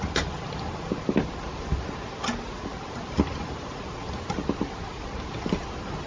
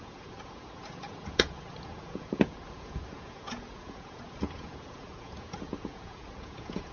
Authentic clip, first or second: first